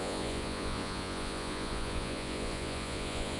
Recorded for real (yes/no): no